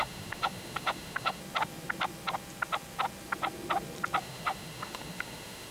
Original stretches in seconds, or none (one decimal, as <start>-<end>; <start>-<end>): 1.4-4.2